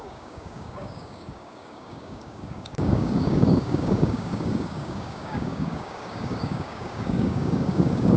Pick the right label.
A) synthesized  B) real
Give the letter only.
A